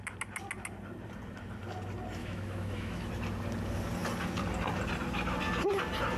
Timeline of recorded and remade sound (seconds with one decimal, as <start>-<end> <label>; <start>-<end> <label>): 0.0-2.2 recorded; 2.2-3.1 remade; 3.1-6.2 recorded